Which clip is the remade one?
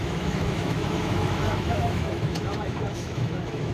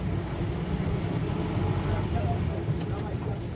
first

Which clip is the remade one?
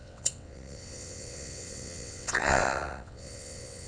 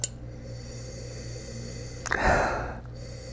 first